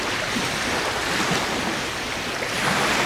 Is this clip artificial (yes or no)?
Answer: no